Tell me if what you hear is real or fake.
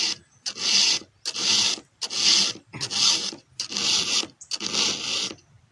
real